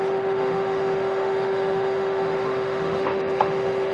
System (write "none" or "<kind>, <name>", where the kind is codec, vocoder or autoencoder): autoencoder, DAC-VAE